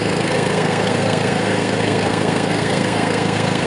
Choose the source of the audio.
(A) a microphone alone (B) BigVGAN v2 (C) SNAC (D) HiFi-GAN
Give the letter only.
C